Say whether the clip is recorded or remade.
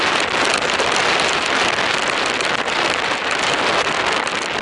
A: recorded